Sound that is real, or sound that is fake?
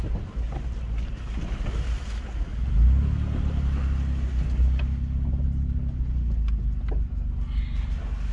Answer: real